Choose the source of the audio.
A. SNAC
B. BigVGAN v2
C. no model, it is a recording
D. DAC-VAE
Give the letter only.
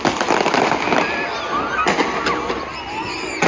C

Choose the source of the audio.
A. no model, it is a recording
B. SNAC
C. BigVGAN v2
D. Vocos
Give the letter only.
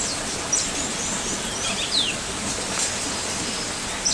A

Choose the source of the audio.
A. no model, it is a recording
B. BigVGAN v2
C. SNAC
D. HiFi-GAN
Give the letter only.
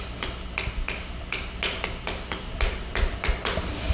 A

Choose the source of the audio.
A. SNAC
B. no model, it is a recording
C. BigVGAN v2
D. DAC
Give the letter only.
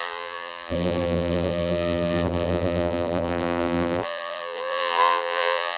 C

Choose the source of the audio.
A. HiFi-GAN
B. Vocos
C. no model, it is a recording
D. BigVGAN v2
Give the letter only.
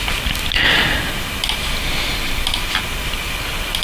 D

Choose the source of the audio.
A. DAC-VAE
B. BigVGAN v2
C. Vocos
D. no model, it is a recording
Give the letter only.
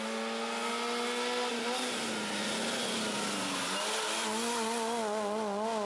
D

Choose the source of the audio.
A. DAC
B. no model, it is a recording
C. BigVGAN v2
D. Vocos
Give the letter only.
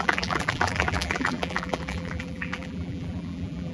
C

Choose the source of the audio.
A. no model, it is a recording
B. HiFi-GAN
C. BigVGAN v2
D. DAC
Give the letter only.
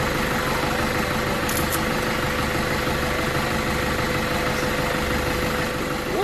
A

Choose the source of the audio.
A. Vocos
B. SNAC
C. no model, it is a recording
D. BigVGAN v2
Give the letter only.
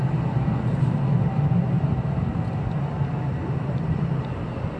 C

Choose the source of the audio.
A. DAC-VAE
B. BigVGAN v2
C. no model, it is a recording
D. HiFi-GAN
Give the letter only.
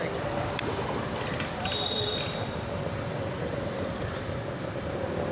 B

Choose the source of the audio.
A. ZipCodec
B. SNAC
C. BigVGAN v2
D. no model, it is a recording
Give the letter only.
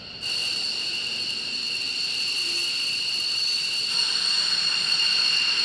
D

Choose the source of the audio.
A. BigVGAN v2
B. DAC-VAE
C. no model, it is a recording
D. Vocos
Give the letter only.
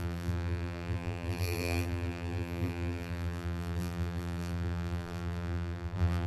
A